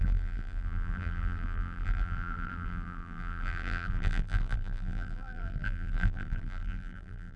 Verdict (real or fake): fake